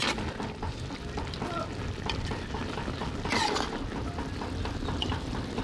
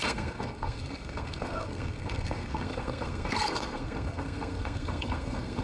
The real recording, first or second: first